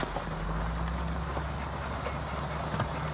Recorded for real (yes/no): yes